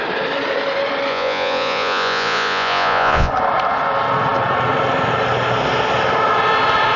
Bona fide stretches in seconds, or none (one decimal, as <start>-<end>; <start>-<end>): 0.0-1.1; 3.3-7.0